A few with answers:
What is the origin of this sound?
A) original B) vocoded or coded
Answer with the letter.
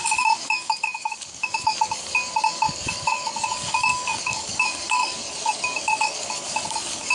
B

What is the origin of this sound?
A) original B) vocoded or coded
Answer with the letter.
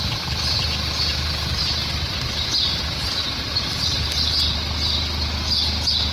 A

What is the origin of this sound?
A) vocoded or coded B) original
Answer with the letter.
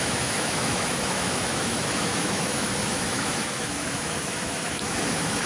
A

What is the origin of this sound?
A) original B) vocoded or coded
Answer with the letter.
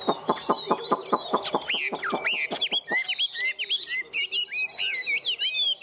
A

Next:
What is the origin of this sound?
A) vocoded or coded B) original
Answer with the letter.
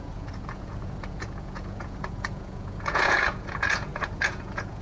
A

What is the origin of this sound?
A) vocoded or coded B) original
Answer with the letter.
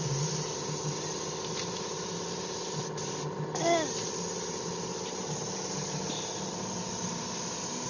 B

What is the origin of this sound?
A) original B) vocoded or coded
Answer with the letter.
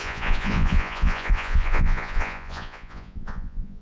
B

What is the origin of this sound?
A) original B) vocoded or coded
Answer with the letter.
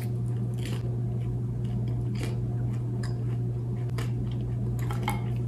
A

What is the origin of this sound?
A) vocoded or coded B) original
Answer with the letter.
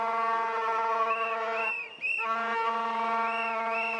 B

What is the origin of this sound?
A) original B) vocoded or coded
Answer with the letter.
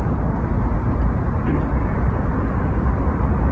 A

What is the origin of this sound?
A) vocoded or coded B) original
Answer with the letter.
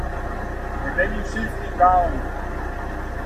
B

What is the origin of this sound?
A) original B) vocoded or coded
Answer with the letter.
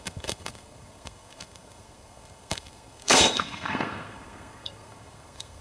B